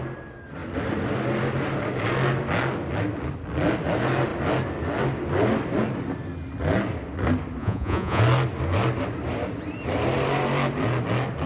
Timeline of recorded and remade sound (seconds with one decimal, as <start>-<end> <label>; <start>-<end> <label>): 0.0-7.6 recorded; 7.6-8.2 remade; 8.2-11.5 recorded